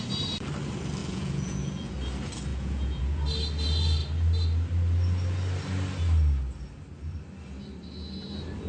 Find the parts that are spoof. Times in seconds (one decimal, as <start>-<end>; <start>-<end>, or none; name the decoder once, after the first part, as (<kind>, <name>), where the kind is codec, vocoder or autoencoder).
1.0-1.9 (vocoder, Vocos); 2.5-3.2